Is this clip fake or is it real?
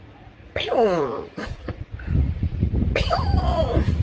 fake